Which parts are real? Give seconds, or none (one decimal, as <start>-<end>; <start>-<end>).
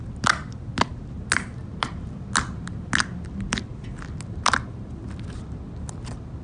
0.0-6.4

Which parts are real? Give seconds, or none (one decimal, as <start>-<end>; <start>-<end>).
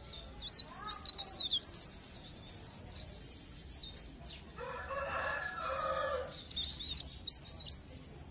0.0-8.3